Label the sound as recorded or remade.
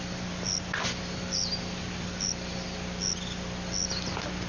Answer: recorded